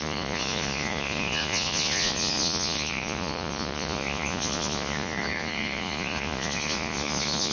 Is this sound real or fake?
fake